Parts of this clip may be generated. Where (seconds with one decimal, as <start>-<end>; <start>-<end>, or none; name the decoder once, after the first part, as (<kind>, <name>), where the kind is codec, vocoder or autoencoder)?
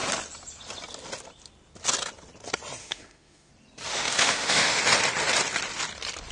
2.8-3.5 (autoencoder, DAC-VAE); 3.9-4.8